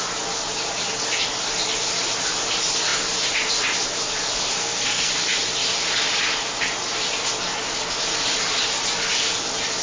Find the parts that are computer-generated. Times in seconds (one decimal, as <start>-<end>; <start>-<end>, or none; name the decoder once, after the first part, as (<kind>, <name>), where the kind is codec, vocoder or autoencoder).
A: 4.6-5.1 (codec, SNAC)